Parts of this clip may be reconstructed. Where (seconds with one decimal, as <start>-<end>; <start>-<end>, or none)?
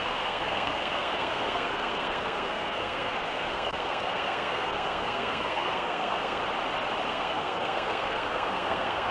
0.0-6.4; 7.1-9.1